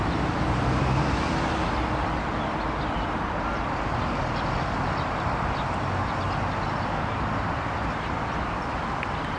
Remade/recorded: recorded